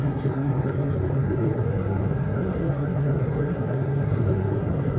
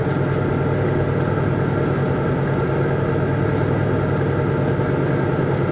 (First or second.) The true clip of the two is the second